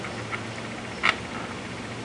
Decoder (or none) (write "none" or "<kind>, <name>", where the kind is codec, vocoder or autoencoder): none